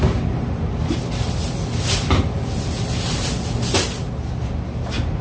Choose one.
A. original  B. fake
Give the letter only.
A